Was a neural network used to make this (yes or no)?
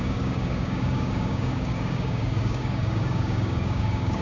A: yes